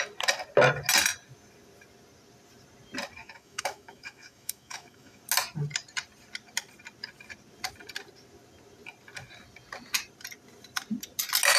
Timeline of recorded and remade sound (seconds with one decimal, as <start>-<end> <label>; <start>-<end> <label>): 0.0-3.2 recorded; 3.2-5.2 remade; 5.2-11.6 recorded